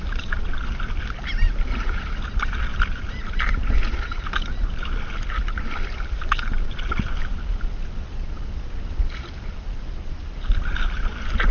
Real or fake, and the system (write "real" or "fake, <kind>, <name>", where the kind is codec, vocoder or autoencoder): real